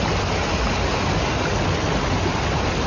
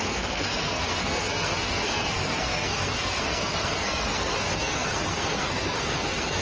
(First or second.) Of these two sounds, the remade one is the second